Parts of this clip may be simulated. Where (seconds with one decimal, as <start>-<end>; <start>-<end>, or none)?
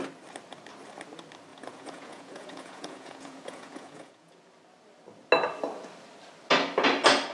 1.5-4.4